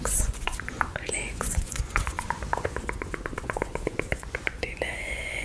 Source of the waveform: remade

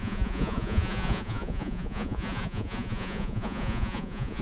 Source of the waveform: remade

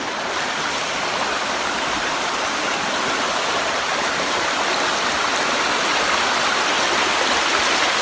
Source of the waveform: recorded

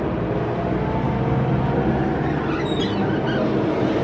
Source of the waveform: recorded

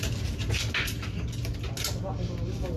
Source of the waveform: recorded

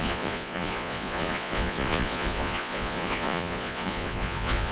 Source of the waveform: remade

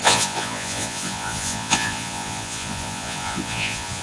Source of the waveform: remade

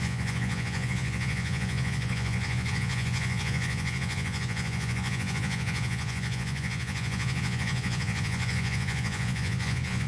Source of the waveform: remade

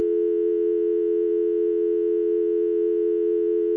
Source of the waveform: remade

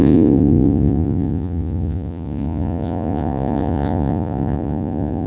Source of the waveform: remade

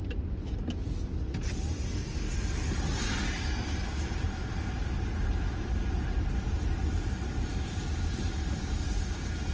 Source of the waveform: recorded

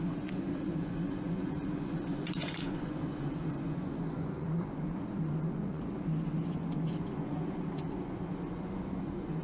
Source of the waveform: remade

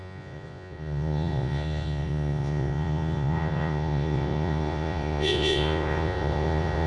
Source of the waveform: remade